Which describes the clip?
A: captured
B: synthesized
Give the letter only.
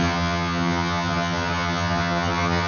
B